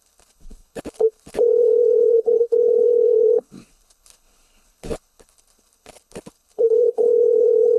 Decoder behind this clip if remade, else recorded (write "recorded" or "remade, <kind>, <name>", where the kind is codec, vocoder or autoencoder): remade, codec, HILCodec